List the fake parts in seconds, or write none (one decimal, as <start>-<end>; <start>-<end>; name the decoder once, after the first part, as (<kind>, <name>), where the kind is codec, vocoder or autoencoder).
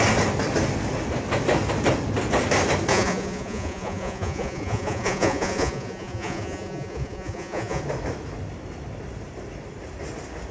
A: 2.9-7.8 (vocoder, Vocos)